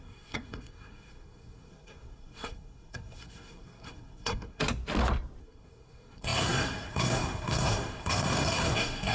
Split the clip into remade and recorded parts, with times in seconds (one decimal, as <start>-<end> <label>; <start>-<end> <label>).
0.0-4.6 remade; 4.6-5.4 recorded; 5.4-9.1 remade